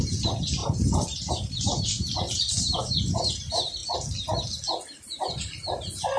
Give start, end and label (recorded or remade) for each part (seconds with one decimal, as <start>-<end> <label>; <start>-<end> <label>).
0.0-3.8 remade; 3.8-6.2 recorded